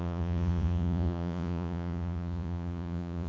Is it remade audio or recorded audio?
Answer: remade